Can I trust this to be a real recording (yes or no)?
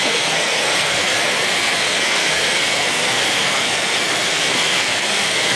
no